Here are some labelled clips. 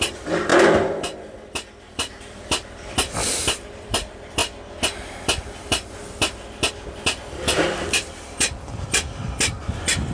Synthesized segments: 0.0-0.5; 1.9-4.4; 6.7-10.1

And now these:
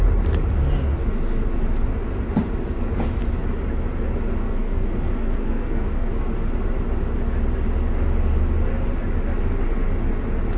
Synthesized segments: 4.4-6.1

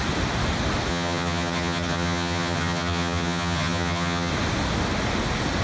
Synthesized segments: 0.9-4.3